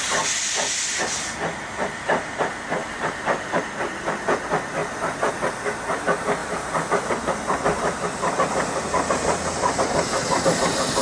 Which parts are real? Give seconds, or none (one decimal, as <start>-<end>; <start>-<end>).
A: 0.0-2.8; 3.6-4.8; 5.3-6.4; 7.1-11.0